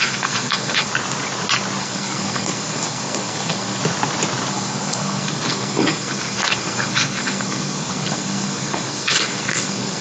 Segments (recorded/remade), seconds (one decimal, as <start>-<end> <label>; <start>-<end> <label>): 0.0-0.9 remade; 0.9-1.8 recorded; 1.8-3.8 remade; 3.8-4.5 recorded; 4.5-10.0 remade

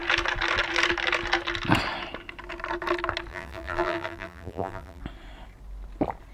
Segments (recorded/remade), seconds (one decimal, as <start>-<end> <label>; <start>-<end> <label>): 0.0-3.3 recorded; 3.3-5.0 remade; 5.0-6.3 recorded

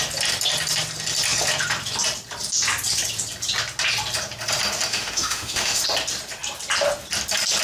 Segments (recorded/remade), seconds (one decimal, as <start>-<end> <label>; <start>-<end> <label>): 0.0-4.9 recorded; 4.9-5.8 remade; 5.8-7.6 recorded